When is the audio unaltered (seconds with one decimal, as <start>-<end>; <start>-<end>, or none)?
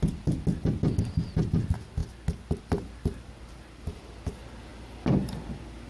0.0-5.9